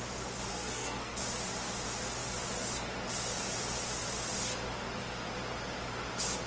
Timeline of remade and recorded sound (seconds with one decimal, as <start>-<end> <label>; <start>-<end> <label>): 0.0-0.5 recorded; 0.5-1.2 remade; 1.2-6.5 recorded